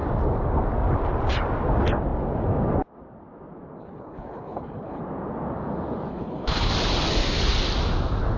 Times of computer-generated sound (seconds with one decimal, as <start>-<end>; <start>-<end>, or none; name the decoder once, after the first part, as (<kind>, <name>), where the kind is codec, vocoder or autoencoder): 3.8-5.0 (codec, HILCodec); 6.1-6.7